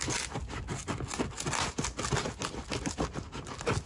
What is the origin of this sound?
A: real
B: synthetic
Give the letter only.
A